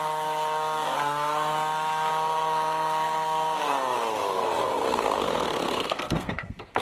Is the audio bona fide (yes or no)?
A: no